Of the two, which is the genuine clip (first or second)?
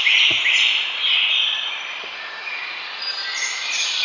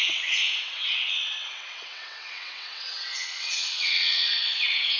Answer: first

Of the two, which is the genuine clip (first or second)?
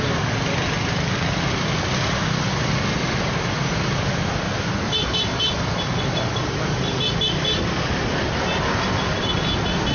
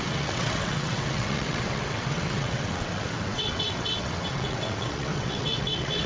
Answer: first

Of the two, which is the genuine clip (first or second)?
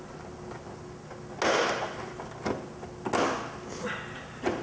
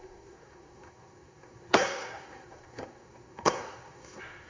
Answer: first